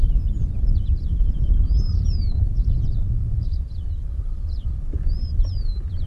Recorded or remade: remade